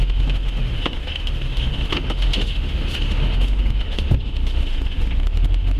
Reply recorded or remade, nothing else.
remade